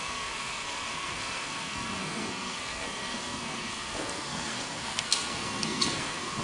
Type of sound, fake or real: fake